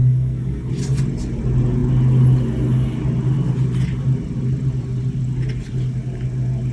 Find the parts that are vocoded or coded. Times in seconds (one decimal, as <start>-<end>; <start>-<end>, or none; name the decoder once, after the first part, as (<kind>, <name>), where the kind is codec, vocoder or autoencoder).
0.0-0.7 (codec, SNAC)